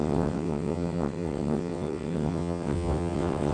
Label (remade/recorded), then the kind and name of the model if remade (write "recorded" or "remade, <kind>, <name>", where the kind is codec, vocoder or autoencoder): remade, vocoder, WaveNeXt